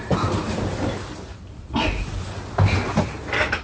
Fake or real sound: real